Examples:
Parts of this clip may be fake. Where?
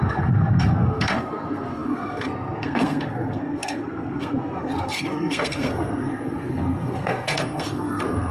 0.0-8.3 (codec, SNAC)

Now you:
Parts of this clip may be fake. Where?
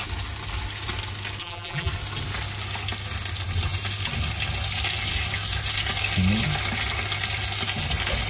1.4-1.9 (vocoder, BigVGAN v2)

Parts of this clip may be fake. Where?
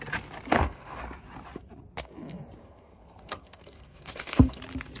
0.5-1.0 (codec, SNAC); 2.6-4.6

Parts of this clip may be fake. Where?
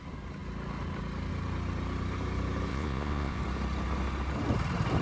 2.7-3.4 (vocoder, Vocos)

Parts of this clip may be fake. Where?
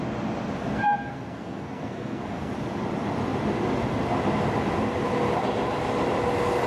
0.7-2.5 (codec, SNAC)